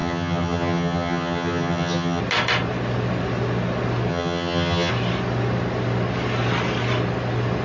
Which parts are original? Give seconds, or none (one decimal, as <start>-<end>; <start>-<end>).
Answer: 2.2-4.1; 4.9-7.6